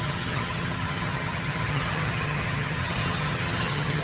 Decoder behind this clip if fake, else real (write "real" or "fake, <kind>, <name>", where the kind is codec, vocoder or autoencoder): fake, vocoder, HiFi-GAN